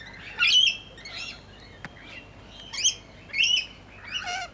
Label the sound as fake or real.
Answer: real